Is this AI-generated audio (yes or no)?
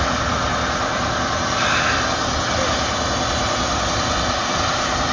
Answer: no